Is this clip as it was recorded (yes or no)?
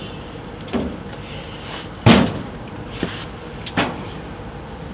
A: yes